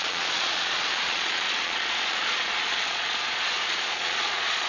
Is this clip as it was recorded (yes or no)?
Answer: no